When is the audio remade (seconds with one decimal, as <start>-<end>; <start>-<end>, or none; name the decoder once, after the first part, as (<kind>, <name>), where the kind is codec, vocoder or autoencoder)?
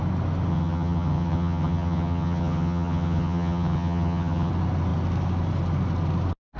0.5-4.5 (vocoder, HiFi-GAN)